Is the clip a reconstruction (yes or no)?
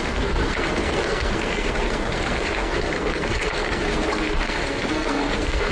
yes